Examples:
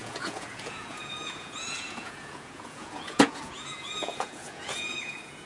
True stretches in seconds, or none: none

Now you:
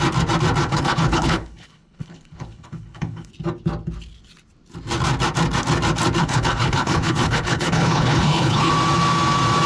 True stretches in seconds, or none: 0.0-0.6; 3.3-6.2; 8.7-9.7